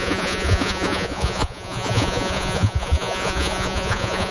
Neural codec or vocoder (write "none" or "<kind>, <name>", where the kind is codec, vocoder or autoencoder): vocoder, Vocos